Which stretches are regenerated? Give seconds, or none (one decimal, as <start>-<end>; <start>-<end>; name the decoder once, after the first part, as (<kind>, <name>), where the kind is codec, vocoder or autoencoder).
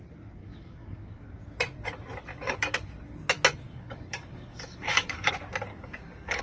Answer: 0.4-1.4 (codec, DAC); 2.3-2.9; 3.7-5.3; 5.7-6.4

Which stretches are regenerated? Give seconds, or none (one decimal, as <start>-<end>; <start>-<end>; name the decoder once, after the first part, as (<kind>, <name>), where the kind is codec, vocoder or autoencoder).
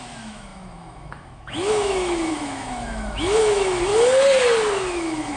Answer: 0.0-3.9 (autoencoder, DAC-VAE); 4.7-5.4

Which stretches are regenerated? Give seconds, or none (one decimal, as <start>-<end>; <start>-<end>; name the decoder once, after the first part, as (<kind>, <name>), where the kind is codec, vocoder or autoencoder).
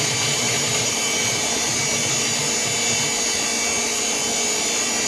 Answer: 0.0-1.7 (vocoder, BigVGAN v2)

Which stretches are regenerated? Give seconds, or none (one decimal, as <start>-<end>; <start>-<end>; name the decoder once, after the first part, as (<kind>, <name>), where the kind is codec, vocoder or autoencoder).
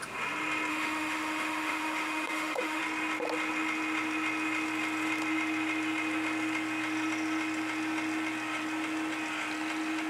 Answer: 0.7-2.8 (autoencoder, DAC-VAE)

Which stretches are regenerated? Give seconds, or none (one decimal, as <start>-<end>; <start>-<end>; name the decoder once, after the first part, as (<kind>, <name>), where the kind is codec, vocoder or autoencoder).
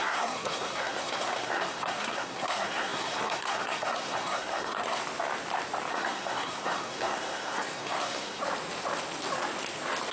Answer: 0.0-5.0 (codec, SNAC); 5.9-8.4